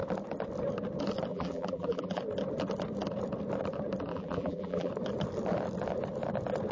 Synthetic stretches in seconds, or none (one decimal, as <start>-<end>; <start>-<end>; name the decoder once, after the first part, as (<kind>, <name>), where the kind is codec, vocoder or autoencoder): 1.3-2.2 (vocoder, BigVGAN v2); 4.1-4.9